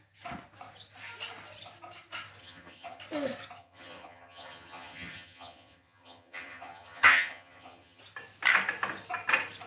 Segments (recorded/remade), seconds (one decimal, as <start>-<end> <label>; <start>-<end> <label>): 0.0-2.4 recorded; 2.4-3.0 remade; 3.0-3.6 recorded; 3.6-8.0 remade; 8.0-9.7 recorded

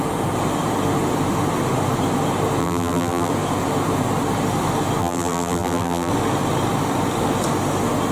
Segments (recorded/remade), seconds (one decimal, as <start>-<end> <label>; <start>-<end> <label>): 0.0-2.6 recorded; 2.6-3.3 remade; 3.3-5.0 recorded; 5.0-6.1 remade; 6.1-8.1 recorded

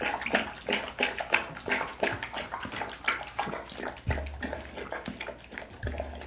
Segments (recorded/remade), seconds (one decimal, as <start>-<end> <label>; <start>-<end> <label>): 0.0-6.3 recorded

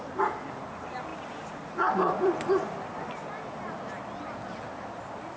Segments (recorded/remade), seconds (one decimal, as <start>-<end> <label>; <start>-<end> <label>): 0.0-5.4 recorded

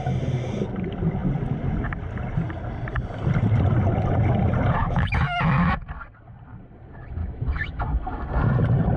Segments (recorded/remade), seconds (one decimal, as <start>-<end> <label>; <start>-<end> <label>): 0.0-4.8 recorded; 4.8-5.8 remade; 5.8-7.2 recorded; 7.2-7.8 remade; 7.8-9.0 recorded